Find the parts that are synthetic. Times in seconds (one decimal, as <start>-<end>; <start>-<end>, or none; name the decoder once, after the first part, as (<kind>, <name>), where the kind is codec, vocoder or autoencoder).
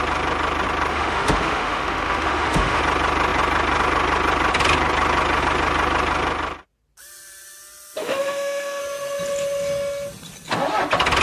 0.9-2.8 (autoencoder, DAC-VAE); 8.0-8.8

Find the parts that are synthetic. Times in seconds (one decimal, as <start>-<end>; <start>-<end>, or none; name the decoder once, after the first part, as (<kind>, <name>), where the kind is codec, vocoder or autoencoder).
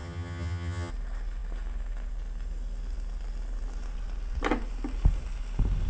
0.0-0.9 (vocoder, HiFi-GAN)